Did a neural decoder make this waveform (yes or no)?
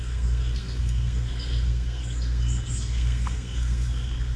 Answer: yes